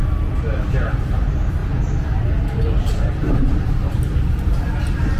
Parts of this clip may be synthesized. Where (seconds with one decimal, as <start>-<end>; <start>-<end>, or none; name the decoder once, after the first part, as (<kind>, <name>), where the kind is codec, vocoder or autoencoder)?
0.0-1.0 (vocoder, BigVGAN v2); 1.6-4.7